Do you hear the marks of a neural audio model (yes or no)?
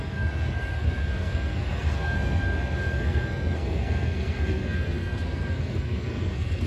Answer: yes